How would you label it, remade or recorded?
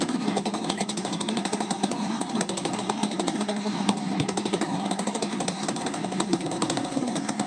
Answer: remade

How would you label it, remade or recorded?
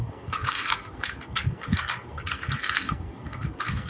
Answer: remade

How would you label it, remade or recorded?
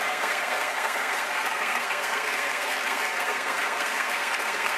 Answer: remade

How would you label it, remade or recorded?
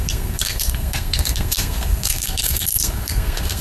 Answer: remade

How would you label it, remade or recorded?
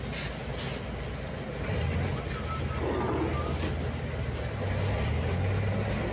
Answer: recorded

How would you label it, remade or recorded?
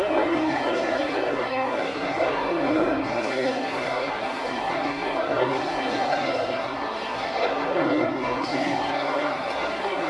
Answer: remade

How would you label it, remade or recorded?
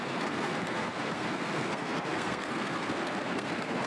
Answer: remade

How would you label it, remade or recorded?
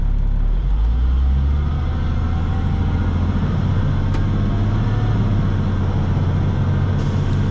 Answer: recorded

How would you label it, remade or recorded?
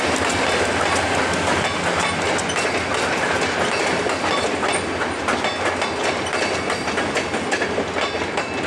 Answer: recorded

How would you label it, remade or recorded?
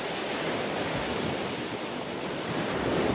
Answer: recorded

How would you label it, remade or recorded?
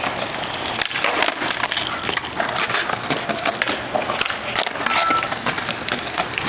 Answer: recorded